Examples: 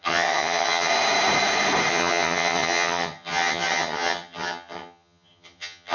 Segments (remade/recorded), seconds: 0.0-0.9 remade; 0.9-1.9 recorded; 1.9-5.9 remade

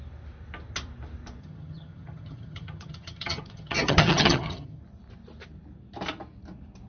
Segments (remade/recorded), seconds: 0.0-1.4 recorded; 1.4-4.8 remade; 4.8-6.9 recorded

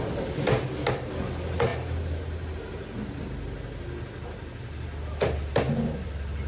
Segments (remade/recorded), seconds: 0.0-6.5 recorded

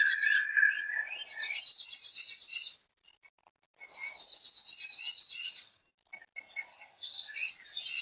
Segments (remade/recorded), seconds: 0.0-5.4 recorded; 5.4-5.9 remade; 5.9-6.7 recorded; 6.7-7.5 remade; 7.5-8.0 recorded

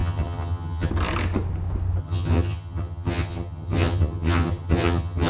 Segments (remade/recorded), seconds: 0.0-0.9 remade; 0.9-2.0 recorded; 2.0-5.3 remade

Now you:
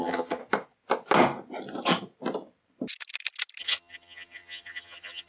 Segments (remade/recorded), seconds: 0.0-0.4 remade; 0.4-3.6 recorded; 3.6-5.3 remade